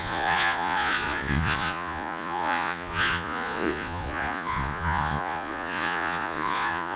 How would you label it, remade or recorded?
remade